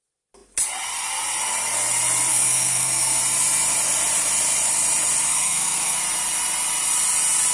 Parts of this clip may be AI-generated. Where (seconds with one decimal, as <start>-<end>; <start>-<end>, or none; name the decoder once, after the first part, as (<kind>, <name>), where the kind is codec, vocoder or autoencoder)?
2.3-3.2 (codec, SNAC); 5.3-6.0